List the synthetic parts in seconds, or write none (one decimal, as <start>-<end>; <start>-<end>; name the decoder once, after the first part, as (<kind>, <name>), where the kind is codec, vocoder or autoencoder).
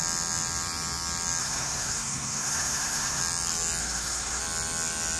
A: 1.4-3.2 (codec, SNAC); 3.8-4.4